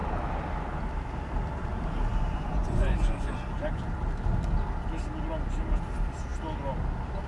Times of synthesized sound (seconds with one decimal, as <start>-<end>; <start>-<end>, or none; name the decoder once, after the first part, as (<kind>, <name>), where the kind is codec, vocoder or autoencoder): 2.3-3.3 (vocoder, Vocos)